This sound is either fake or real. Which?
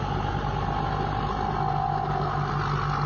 real